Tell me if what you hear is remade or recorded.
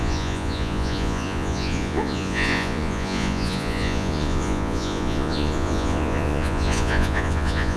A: remade